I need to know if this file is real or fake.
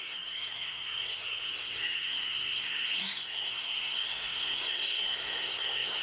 fake